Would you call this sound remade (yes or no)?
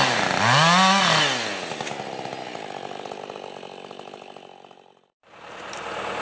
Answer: no